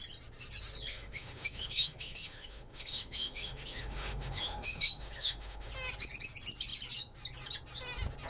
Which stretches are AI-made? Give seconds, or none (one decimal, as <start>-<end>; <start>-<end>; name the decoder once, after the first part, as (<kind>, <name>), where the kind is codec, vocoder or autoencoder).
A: 0.9-5.7 (autoencoder, DAC-VAE)